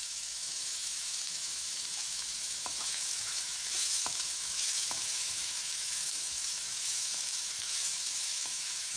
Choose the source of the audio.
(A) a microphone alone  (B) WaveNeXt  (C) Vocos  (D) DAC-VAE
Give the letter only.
D